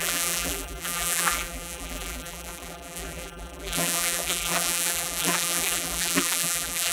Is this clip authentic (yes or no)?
no